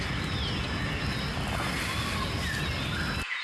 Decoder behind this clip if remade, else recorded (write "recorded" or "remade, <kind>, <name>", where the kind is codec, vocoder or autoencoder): recorded